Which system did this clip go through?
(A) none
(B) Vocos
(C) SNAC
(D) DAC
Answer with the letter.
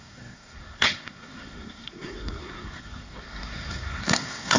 C